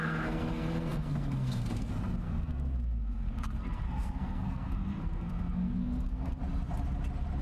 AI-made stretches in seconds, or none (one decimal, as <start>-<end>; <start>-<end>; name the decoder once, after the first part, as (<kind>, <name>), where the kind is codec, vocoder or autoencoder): 0.0-6.4 (codec, SNAC)